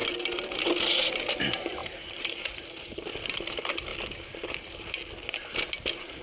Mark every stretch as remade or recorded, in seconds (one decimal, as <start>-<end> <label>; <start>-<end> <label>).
0.0-1.8 recorded; 1.8-2.5 remade; 2.5-6.2 recorded